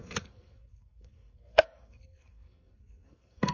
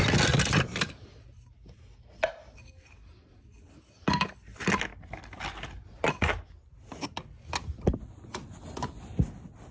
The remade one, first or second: first